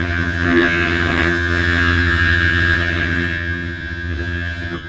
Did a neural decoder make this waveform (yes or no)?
yes